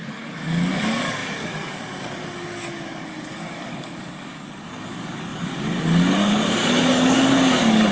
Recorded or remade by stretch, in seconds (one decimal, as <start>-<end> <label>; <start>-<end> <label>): 0.0-7.9 remade